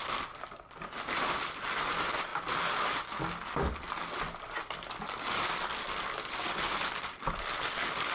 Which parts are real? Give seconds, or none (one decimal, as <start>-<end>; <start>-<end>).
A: 0.0-8.1